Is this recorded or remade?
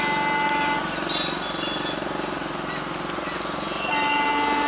recorded